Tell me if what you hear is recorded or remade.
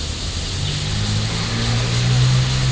recorded